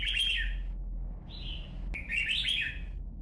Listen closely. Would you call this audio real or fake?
real